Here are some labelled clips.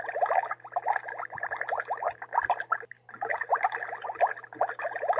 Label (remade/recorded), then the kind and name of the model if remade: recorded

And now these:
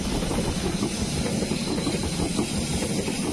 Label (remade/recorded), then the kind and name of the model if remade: recorded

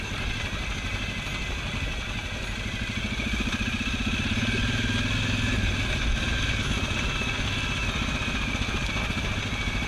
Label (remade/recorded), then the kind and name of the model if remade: recorded